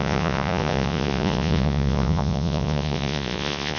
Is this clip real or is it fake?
fake